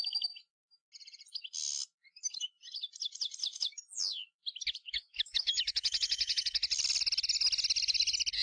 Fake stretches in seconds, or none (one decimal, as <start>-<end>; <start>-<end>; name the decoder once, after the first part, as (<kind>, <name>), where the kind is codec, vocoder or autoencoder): 3.4-4.0 (autoencoder, DAC-VAE); 4.8-6.6